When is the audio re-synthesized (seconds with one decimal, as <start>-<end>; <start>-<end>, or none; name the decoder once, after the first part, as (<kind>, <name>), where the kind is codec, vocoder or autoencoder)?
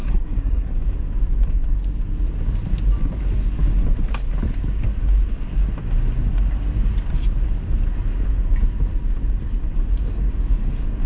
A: 0.0-0.7 (codec, SNAC)